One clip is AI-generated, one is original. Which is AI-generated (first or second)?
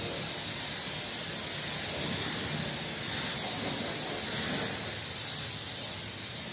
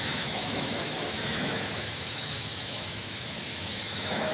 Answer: second